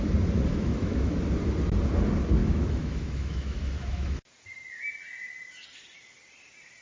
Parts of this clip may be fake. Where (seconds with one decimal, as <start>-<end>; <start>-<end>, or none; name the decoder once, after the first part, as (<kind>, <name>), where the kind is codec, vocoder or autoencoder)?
0.5-1.1 (autoencoder, DAC-VAE); 2.4-4.3